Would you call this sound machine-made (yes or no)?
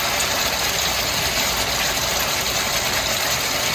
no